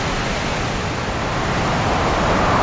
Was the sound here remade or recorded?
recorded